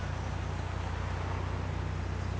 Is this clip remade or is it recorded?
recorded